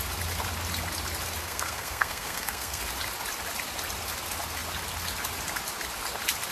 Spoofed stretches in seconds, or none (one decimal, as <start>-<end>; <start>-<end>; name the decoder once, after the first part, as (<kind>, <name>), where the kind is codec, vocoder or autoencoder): 1.4-2.8 (codec, SNAC)